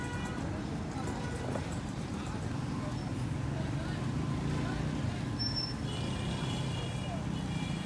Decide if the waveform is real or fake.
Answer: real